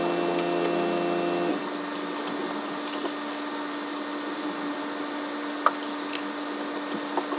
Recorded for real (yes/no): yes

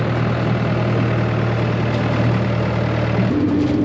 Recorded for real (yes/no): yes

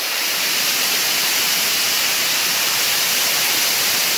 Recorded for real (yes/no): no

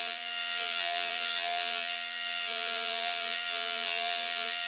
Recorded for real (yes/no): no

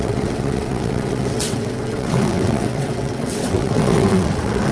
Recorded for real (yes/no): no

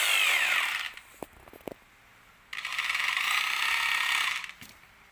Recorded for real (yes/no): yes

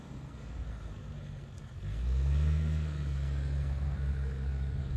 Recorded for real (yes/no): no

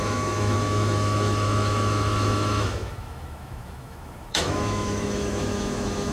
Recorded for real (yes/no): no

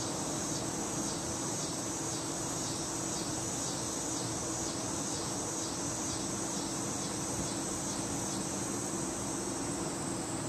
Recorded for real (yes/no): no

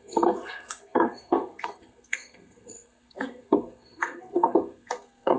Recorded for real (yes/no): no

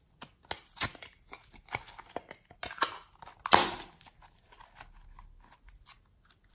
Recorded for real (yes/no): yes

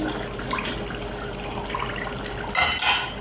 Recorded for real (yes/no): yes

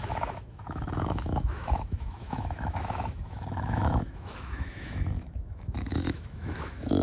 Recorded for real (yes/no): no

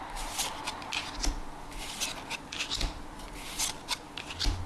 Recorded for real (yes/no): yes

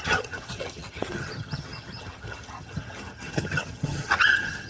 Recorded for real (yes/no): no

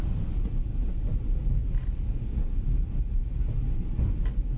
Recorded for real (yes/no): no